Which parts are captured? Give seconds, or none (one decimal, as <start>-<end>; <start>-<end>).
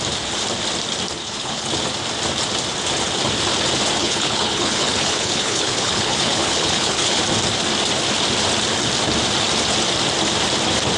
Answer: 0.0-1.2; 1.7-4.0; 7.2-11.0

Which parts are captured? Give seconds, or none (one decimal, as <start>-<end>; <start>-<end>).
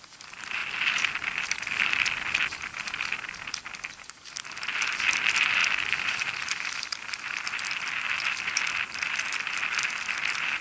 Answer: 0.0-10.6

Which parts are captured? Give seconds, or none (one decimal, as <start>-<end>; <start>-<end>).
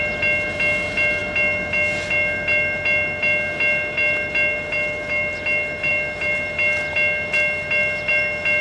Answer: 0.0-8.6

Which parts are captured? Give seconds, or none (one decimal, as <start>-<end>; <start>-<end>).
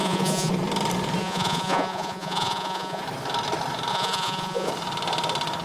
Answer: 0.5-1.2; 3.0-3.9; 4.7-5.6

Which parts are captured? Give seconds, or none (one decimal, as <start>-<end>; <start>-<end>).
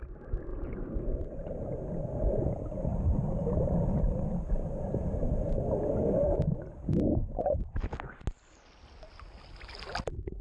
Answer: 0.0-10.4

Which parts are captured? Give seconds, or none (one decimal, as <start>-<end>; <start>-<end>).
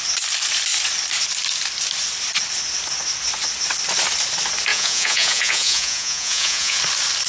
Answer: 0.0-4.7; 6.8-7.3